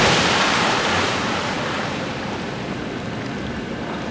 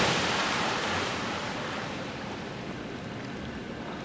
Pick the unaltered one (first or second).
first